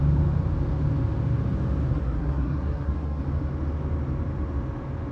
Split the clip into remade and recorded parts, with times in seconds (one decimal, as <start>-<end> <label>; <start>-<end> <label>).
0.0-1.9 recorded; 1.9-3.2 remade; 3.2-5.1 recorded